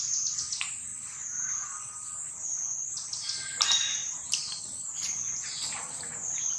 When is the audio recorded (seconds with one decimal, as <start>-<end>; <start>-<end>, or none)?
0.0-4.0; 4.6-6.6